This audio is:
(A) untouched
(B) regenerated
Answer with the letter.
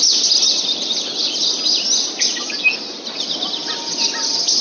A